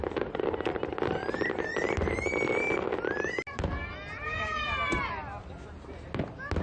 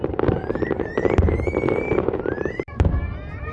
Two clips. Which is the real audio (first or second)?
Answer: first